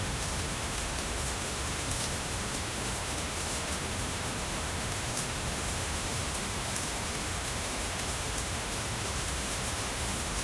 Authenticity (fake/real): fake